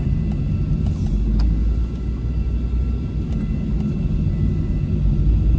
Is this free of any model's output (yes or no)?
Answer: yes